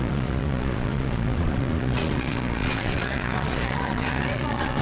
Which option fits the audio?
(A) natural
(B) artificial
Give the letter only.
B